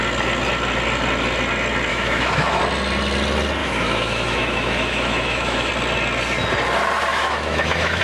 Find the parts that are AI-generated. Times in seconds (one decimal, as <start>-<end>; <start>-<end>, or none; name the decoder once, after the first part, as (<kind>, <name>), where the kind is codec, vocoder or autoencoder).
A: 1.9-2.6 (autoencoder, DAC-VAE); 3.6-5.7; 7.1-8.0